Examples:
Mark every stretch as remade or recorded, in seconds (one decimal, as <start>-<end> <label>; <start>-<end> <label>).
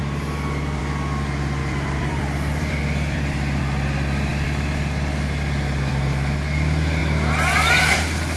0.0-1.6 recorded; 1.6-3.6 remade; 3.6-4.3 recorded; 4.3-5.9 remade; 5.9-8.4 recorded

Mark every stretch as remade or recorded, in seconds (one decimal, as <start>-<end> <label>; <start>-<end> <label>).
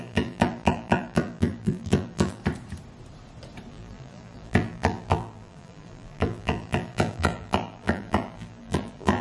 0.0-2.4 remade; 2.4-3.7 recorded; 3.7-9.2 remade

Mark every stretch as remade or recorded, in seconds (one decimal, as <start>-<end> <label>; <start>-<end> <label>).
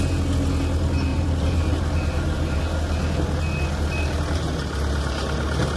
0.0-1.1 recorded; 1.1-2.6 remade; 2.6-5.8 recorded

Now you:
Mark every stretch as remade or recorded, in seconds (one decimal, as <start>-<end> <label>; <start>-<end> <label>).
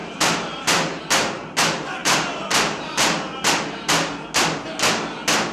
0.0-1.0 remade; 1.0-2.0 recorded; 2.0-3.5 remade; 3.5-5.5 recorded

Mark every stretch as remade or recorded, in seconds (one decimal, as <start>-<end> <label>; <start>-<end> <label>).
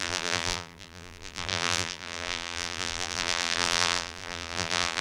0.0-5.0 remade